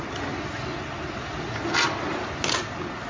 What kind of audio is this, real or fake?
real